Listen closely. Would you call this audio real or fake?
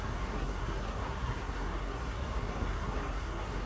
fake